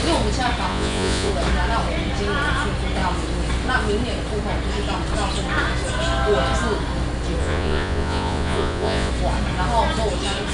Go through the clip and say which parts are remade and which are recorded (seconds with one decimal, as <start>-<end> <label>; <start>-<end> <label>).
0.0-0.7 recorded; 0.7-1.3 remade; 1.3-7.4 recorded; 7.4-9.1 remade; 9.1-10.5 recorded

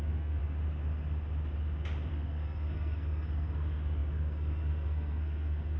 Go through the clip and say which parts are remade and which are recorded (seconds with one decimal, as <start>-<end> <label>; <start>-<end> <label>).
0.0-0.4 remade; 0.4-2.1 recorded; 2.1-5.8 remade

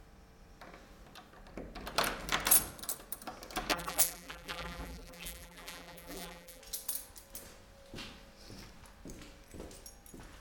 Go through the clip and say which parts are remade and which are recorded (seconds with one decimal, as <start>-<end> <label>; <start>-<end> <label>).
0.0-3.7 recorded; 3.7-6.6 remade; 6.6-10.4 recorded

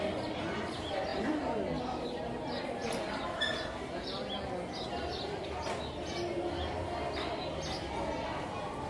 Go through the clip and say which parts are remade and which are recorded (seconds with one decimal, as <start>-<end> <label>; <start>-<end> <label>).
0.0-2.8 recorded; 2.8-4.0 remade; 4.0-8.9 recorded

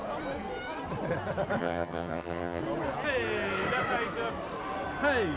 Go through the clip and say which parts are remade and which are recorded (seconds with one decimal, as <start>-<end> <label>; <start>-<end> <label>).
0.0-1.6 recorded; 1.6-2.6 remade; 2.6-5.4 recorded

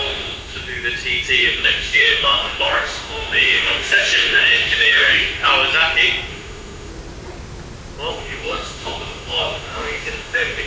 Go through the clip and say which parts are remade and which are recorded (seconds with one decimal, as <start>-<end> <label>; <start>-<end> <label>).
0.0-0.6 remade; 0.6-1.4 recorded; 1.4-5.5 remade; 5.5-6.3 recorded; 6.3-6.9 remade; 6.9-8.1 recorded; 8.1-10.7 remade

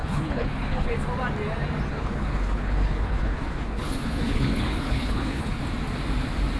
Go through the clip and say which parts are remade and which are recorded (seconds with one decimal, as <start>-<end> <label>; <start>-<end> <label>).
0.0-0.9 remade; 0.9-1.9 recorded; 1.9-5.6 remade; 5.6-6.6 recorded

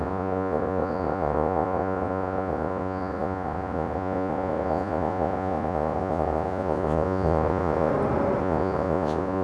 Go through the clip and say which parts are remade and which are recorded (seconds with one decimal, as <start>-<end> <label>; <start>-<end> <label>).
0.0-7.9 remade; 7.9-8.4 recorded; 8.4-9.4 remade